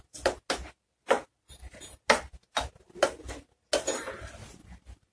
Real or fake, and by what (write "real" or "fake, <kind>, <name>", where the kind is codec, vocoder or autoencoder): real